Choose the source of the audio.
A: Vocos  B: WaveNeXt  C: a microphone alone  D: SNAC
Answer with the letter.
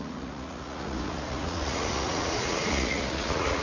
A